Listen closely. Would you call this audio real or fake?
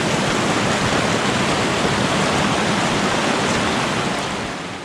real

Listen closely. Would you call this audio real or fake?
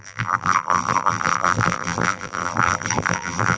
fake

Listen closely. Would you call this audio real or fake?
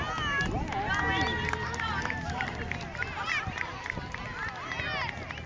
real